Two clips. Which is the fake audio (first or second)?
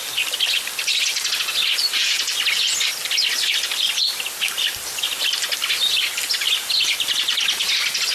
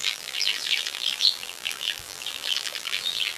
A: second